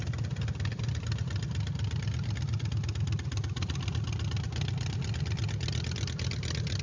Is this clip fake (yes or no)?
no